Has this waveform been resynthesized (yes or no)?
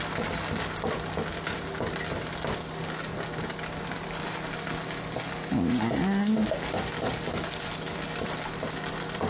no